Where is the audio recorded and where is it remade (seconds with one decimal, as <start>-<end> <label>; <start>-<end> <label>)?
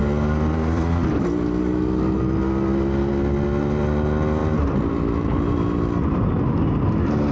0.0-3.1 remade; 3.1-4.4 recorded; 4.4-6.4 remade; 6.4-7.3 recorded